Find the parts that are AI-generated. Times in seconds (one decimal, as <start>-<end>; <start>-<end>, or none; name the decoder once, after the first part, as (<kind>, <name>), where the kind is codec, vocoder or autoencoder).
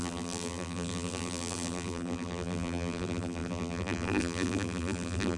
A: 0.0-5.4 (vocoder, BigVGAN v2)